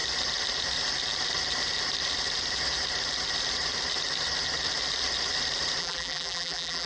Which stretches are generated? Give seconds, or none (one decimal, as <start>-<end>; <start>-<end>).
5.8-6.9